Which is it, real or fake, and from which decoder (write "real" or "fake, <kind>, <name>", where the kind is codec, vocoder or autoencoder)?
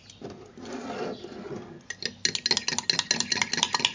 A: real